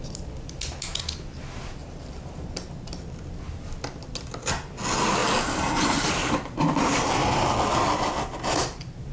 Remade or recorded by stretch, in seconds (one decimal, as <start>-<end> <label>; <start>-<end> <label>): 0.0-1.8 recorded; 1.8-2.5 remade; 2.5-5.2 recorded; 5.2-7.0 remade; 7.0-9.1 recorded